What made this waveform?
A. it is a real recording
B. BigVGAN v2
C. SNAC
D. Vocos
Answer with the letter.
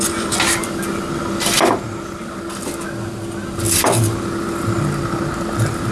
A